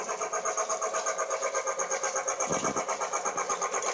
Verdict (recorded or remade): recorded